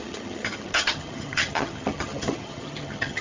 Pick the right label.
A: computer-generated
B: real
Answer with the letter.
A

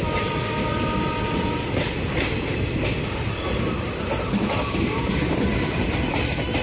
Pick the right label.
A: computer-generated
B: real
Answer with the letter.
B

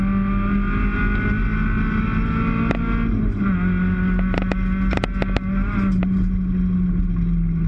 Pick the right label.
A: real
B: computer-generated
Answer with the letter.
A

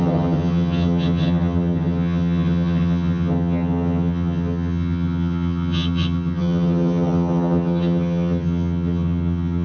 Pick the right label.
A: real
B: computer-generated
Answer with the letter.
B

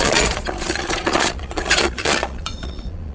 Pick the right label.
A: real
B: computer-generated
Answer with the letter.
B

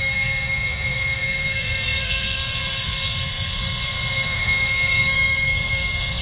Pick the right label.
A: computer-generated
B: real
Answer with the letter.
A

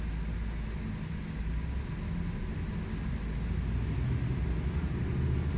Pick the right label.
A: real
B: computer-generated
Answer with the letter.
A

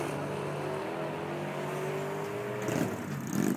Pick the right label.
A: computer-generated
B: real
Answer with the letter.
B